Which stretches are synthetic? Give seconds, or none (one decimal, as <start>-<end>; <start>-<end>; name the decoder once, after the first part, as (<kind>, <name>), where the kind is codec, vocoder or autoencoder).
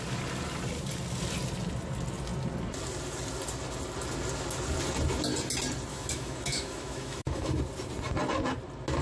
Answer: 5.9-7.6 (autoencoder, DAC-VAE)